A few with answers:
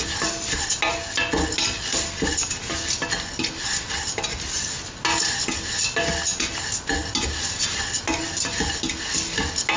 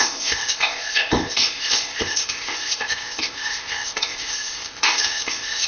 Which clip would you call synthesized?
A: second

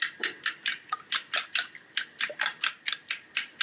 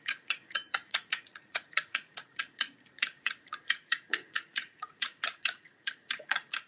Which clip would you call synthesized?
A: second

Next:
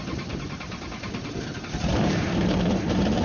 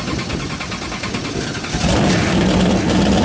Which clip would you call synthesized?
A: first